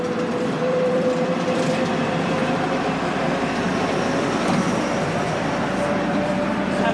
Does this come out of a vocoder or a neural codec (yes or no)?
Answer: yes